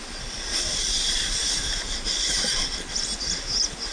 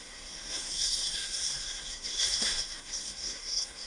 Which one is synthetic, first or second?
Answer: second